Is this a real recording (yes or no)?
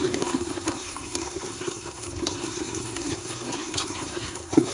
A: no